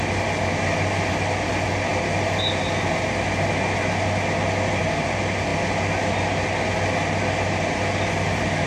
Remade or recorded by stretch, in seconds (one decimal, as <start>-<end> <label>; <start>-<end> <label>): 0.0-8.7 recorded